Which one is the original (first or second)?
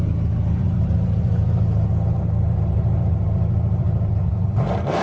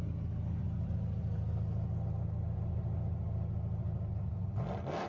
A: second